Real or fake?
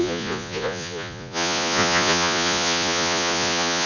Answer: fake